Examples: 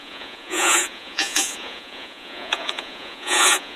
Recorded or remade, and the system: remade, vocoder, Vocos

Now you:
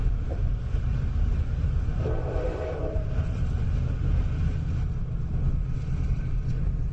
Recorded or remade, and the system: remade, vocoder, BigVGAN v2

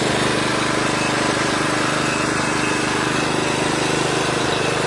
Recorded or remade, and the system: recorded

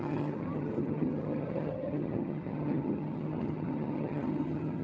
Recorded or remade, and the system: remade, vocoder, HiFi-GAN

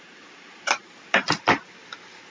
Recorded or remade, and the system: recorded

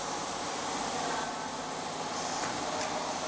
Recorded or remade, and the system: recorded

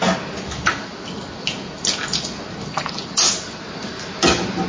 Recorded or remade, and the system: recorded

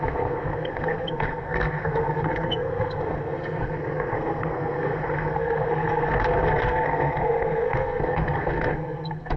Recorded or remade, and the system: remade, codec, SNAC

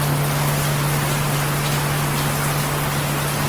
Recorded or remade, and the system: recorded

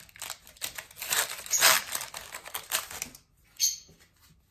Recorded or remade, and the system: recorded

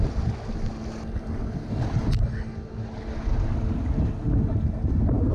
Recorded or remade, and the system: recorded